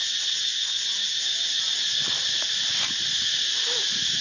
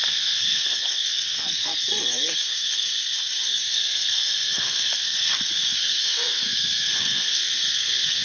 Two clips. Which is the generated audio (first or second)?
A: second